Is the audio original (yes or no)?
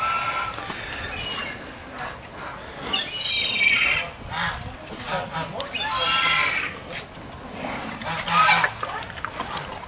yes